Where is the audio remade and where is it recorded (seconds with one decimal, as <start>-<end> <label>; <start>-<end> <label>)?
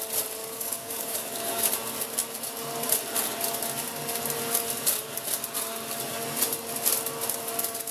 0.0-0.4 recorded; 0.4-1.7 remade; 1.7-7.9 recorded